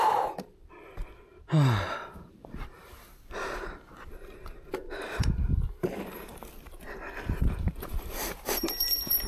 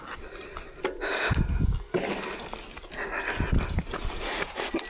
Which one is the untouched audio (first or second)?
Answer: second